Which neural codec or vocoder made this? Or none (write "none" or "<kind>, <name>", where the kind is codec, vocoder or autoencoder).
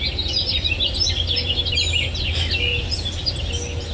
none